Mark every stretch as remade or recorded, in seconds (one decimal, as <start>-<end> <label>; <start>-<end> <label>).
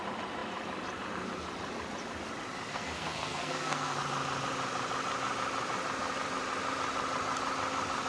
0.0-2.7 recorded; 2.7-4.0 remade; 4.0-8.1 recorded